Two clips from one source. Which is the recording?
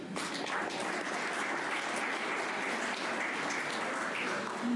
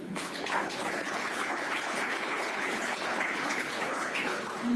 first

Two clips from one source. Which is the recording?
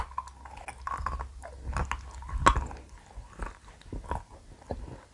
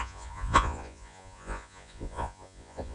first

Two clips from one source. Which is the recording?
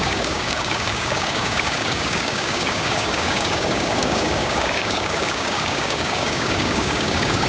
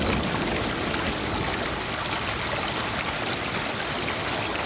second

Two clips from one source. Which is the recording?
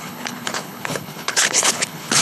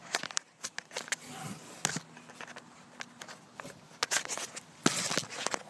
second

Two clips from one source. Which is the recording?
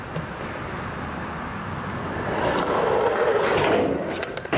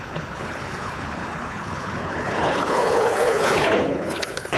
first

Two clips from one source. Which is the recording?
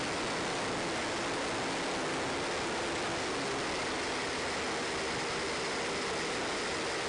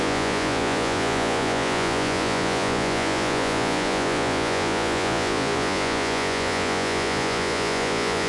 first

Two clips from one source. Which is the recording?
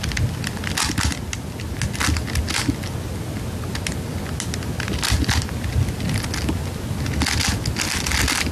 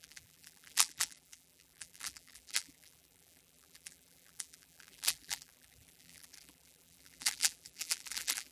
first